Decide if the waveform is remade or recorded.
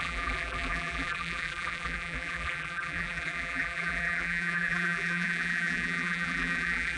remade